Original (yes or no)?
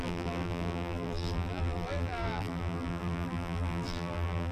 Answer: no